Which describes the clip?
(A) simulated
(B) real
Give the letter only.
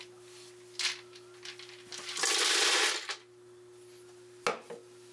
B